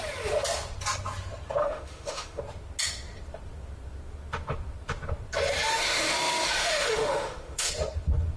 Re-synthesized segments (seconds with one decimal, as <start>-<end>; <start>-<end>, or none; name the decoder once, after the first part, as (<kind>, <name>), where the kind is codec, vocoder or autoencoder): 1.6-2.4 (autoencoder, DAC-VAE); 5.7-7.7